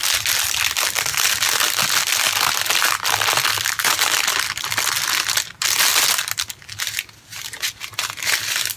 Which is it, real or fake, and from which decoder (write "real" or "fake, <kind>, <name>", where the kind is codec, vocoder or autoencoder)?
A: real